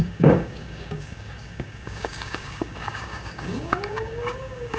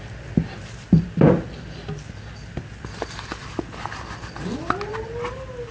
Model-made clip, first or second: first